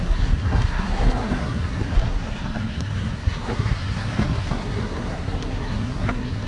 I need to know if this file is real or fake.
fake